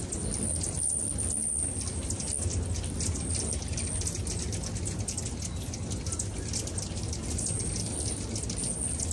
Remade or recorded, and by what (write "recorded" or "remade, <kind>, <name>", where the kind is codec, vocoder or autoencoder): recorded